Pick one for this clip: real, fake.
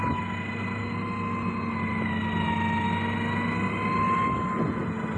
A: real